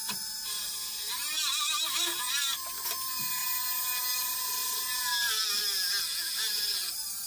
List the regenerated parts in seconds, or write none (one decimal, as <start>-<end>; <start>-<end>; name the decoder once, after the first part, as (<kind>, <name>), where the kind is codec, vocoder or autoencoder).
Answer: 0.0-2.2 (vocoder, BigVGAN v2); 3.4-4.0; 4.6-5.5